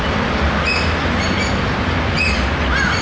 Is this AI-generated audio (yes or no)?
no